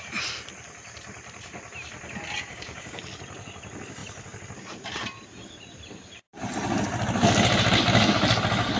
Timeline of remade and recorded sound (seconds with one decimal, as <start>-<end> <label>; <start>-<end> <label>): 0.0-2.5 recorded; 2.5-3.0 remade; 3.0-8.8 recorded